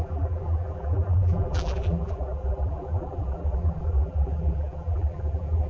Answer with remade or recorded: remade